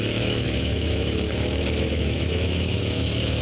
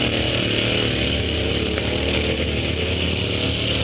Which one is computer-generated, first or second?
first